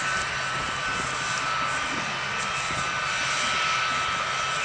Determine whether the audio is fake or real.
real